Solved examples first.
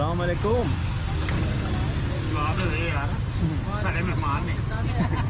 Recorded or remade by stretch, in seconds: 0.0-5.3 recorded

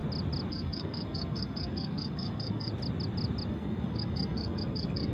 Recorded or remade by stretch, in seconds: 0.0-0.5 recorded; 0.5-2.7 remade; 2.7-3.5 recorded; 3.5-5.1 remade

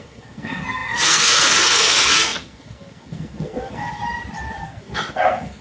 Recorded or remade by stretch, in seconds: 0.0-4.0 remade; 4.0-4.6 recorded; 4.6-5.6 remade

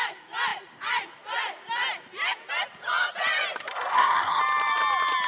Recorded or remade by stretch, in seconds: 0.0-3.7 recorded; 3.7-4.4 remade; 4.4-5.3 recorded